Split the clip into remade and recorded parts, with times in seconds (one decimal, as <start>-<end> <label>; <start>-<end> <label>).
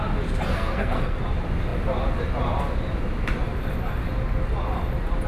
0.0-0.5 recorded; 0.5-1.2 remade; 1.2-5.3 recorded